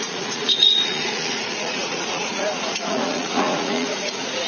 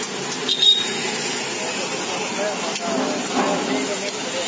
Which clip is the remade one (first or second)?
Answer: first